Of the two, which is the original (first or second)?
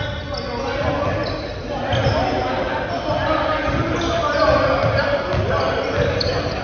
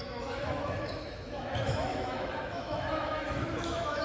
first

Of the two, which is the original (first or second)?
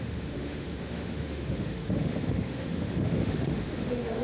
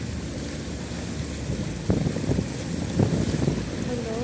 second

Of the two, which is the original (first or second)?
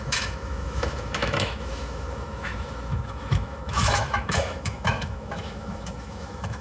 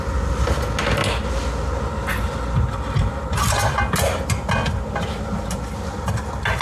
second